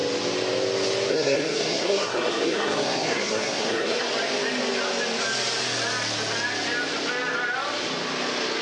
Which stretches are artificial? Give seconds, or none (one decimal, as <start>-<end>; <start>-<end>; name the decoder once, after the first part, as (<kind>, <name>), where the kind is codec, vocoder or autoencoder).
1.1-4.1 (codec, SNAC)